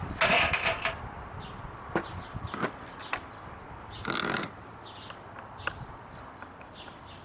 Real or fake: real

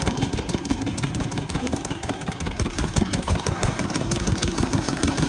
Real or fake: fake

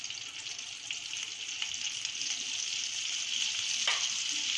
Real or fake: real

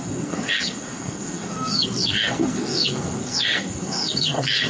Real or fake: fake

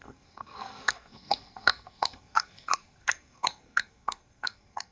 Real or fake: fake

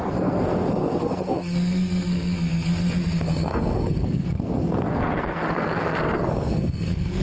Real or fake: fake